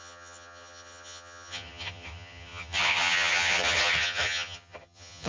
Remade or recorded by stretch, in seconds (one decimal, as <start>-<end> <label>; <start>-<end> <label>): 0.0-5.3 remade